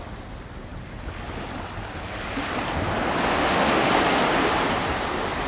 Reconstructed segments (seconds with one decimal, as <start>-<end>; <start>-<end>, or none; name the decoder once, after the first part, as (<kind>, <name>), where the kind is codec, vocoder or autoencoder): 3.4-3.9 (autoencoder, DAC-VAE)